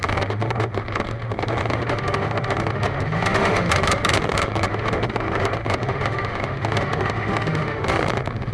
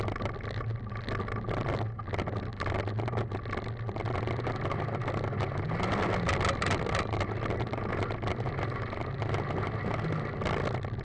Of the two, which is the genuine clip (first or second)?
second